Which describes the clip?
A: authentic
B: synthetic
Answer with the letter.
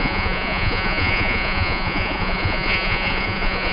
B